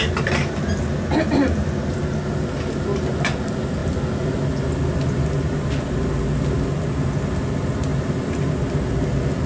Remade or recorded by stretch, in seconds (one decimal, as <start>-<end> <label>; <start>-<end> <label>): 0.0-7.9 recorded; 7.9-8.5 remade; 8.5-9.5 recorded